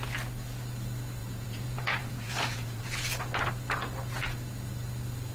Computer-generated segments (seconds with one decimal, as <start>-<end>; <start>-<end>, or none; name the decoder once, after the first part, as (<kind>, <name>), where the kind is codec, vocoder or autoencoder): 1.2-2.8 (vocoder, Vocos)